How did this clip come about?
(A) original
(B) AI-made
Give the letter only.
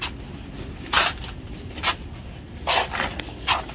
A